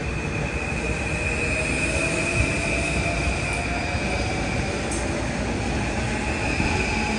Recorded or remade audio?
recorded